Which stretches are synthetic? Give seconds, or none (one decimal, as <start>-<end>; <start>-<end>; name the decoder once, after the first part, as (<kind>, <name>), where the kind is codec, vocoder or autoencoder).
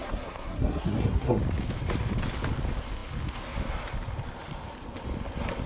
0.0-1.4 (codec, SNAC)